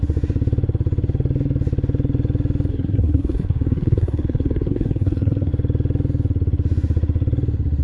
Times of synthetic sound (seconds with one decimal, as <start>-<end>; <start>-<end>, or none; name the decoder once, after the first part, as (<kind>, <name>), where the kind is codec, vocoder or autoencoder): 2.7-5.5 (codec, SNAC)